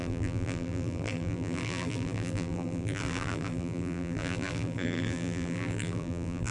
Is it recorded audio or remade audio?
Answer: remade